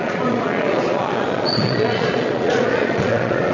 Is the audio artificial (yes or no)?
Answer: yes